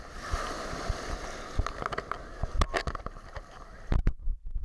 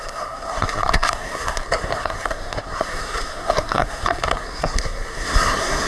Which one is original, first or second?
first